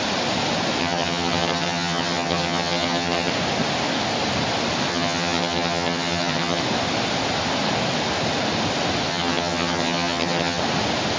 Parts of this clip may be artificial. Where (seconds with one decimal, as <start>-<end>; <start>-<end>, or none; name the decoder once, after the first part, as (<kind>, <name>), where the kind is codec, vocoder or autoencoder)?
0.8-3.3 (vocoder, HiFi-GAN); 4.9-6.6; 9.1-10.6